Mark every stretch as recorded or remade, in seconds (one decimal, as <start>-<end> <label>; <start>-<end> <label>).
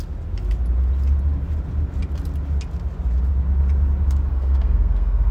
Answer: 0.0-4.3 recorded; 4.3-5.3 remade